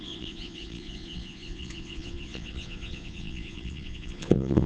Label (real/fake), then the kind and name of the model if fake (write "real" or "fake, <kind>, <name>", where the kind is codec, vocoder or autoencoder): fake, vocoder, Vocos